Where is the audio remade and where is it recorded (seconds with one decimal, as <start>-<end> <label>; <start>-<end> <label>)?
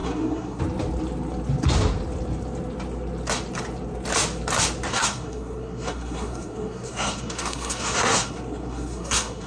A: 0.0-0.6 remade; 0.6-4.9 recorded; 4.9-9.5 remade